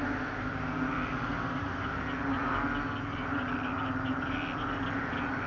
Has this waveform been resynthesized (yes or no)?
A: no